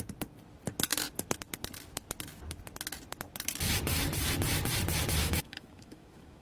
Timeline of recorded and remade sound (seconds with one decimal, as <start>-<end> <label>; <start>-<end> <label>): 0.0-5.2 recorded; 5.2-6.4 remade